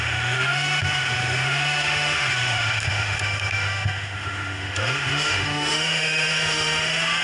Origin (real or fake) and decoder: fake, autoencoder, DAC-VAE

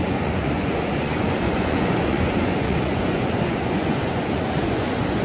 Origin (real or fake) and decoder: fake, vocoder, Vocos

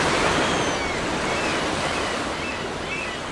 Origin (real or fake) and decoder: real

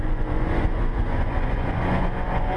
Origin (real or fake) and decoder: fake, vocoder, Vocos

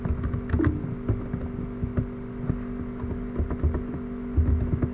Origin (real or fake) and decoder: real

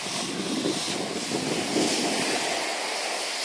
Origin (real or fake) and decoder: real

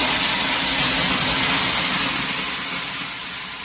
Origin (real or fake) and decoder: real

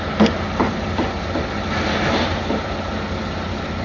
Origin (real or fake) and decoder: real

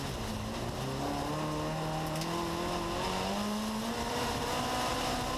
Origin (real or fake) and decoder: real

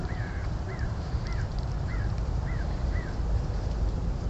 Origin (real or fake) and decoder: fake, vocoder, BigVGAN v2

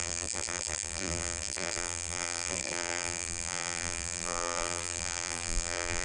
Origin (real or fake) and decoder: fake, vocoder, BigVGAN v2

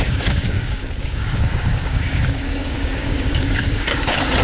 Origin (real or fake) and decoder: fake, codec, DAC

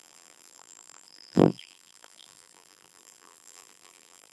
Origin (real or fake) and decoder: fake, vocoder, BigVGAN v2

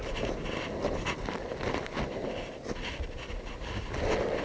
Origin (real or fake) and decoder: real